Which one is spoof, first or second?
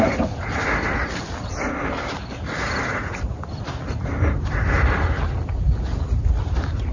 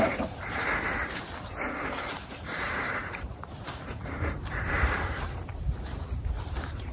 second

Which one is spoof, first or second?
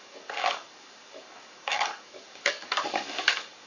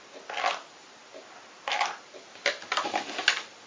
first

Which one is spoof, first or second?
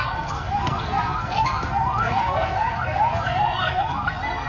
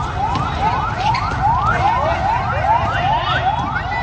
first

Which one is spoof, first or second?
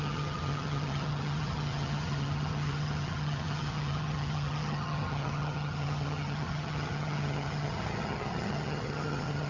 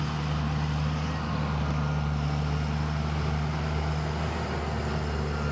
first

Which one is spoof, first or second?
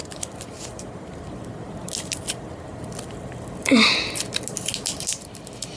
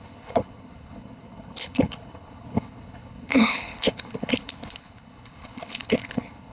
second